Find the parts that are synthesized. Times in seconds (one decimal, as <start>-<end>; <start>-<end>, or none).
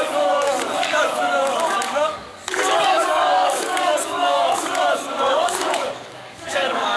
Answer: 0.0-7.0